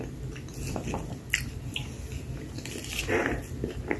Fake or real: real